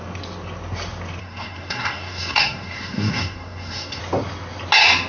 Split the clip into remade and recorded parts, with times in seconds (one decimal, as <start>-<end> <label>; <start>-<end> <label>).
0.0-1.2 recorded; 1.2-4.0 remade; 4.0-5.1 recorded